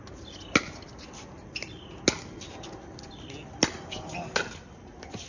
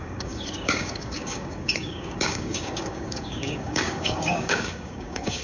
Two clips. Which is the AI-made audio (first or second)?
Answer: second